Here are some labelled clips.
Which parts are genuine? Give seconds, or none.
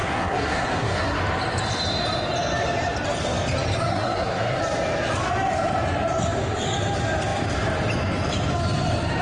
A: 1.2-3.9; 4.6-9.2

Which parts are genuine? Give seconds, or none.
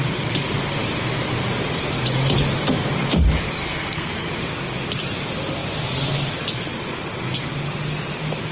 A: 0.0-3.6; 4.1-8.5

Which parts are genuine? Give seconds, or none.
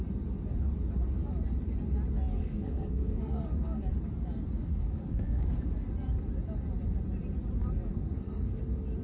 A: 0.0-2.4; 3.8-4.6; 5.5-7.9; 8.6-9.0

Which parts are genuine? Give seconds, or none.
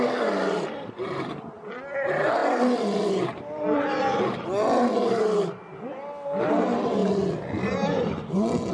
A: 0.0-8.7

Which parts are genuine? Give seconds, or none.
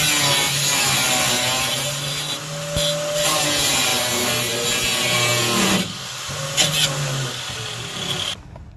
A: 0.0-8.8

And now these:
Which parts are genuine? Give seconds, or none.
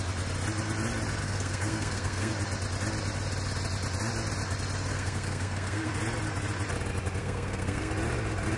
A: 0.0-1.2; 2.3-4.9; 5.9-7.2; 7.9-8.6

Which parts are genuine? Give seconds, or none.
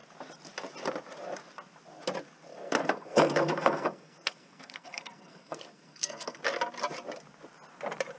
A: 0.0-2.5; 6.4-8.2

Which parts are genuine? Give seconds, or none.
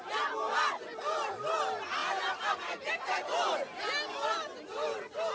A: 0.0-5.3